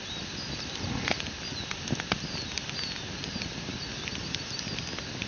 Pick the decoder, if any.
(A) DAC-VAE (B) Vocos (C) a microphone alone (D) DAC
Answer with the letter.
C